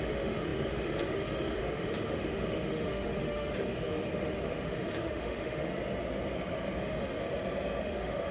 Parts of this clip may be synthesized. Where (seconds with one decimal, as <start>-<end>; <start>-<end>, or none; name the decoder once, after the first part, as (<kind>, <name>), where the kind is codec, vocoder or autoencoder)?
0.0-5.7 (autoencoder, DAC-VAE); 6.8-7.2; 7.8-8.3